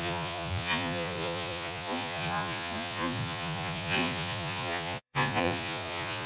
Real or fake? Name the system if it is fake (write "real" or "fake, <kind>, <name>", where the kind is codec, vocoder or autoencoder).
fake, vocoder, Vocos